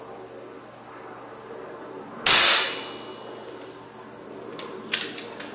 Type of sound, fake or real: real